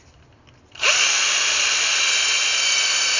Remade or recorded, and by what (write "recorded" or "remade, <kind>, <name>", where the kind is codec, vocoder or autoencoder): recorded